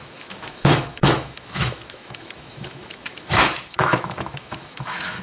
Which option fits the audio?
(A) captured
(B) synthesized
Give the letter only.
B